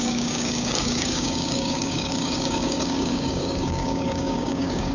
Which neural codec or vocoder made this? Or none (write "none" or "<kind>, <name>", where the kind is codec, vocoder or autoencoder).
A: codec, DAC